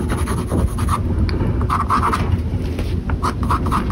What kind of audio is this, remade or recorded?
recorded